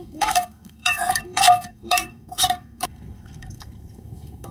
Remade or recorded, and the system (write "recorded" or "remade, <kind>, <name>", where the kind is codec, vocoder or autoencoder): remade, codec, SNAC